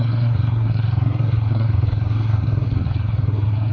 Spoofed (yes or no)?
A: yes